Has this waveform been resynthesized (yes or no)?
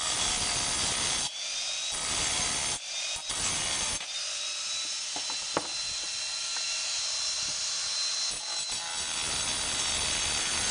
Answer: no